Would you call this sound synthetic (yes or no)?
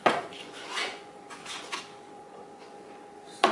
yes